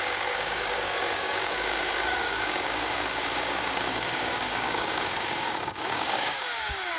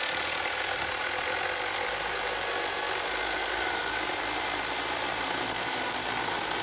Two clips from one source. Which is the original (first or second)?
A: second